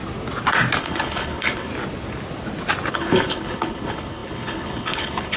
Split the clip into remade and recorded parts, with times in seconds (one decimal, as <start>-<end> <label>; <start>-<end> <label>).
0.0-0.8 recorded; 0.8-1.7 remade; 1.7-2.9 recorded; 2.9-5.4 remade